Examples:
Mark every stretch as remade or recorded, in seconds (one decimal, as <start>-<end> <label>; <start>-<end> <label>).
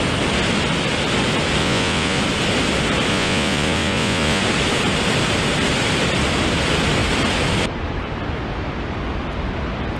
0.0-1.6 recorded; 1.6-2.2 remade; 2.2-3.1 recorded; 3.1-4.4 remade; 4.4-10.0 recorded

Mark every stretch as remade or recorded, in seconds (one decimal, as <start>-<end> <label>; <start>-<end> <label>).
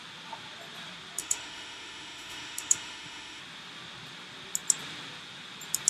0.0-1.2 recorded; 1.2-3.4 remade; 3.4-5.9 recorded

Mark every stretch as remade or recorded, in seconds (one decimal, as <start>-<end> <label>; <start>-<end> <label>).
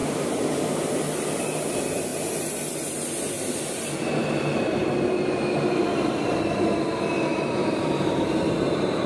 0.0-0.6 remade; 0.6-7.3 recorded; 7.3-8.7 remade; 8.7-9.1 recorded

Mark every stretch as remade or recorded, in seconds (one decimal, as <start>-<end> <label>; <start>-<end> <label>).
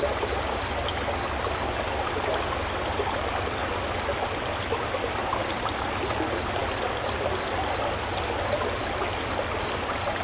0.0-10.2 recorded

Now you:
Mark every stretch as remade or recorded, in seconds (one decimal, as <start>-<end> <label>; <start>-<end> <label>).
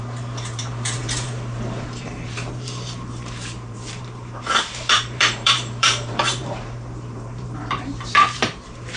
0.0-9.0 remade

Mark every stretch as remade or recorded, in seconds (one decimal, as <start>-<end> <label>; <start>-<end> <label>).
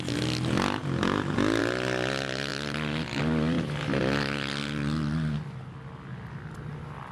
0.0-7.1 recorded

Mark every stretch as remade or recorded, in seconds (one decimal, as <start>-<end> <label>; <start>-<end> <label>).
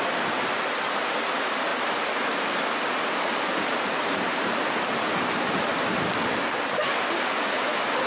0.0-8.1 recorded